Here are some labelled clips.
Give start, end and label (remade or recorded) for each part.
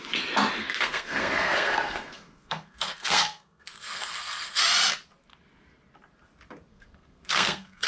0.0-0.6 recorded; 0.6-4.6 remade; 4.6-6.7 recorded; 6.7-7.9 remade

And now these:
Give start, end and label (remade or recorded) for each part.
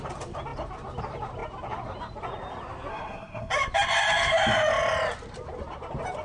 0.0-2.9 recorded; 2.9-3.5 remade; 3.5-6.2 recorded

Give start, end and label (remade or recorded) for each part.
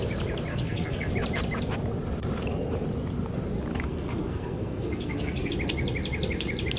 0.0-0.5 recorded; 0.5-1.1 remade; 1.1-3.7 recorded; 3.7-5.5 remade; 5.5-6.8 recorded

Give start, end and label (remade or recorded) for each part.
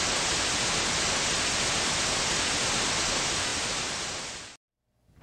0.0-5.2 recorded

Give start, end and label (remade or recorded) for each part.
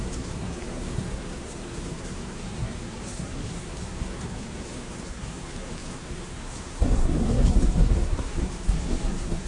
0.0-9.5 remade